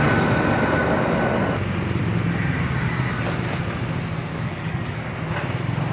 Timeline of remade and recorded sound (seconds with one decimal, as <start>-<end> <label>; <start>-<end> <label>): 0.0-4.3 recorded; 4.3-5.1 remade; 5.1-5.9 recorded